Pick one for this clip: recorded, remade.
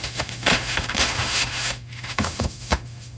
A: remade